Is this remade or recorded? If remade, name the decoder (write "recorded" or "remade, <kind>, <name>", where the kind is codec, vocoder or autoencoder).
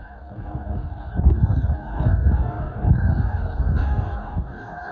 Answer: remade, codec, DAC